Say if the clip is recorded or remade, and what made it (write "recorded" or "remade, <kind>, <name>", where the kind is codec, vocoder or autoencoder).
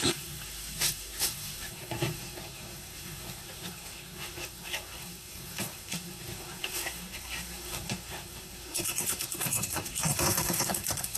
remade, codec, SNAC